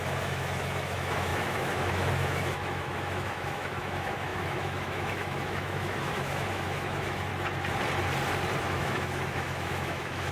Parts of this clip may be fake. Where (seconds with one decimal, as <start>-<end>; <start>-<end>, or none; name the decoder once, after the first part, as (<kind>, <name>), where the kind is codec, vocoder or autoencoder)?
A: 0.0-7.3 (autoencoder, DAC-VAE); 8.6-10.3